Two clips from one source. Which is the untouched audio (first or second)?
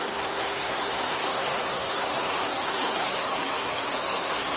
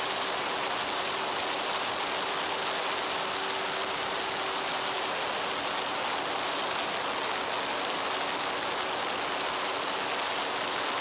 second